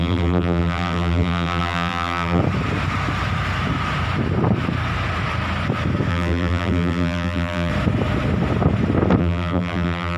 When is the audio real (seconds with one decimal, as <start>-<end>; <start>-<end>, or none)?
2.4-6.1; 7.7-9.2